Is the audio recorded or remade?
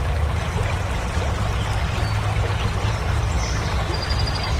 recorded